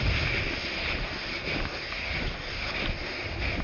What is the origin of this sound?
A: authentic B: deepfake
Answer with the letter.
A